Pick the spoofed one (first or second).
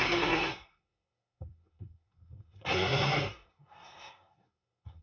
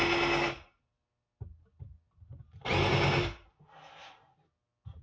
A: first